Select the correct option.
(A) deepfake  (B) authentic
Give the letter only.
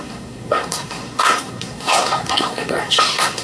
A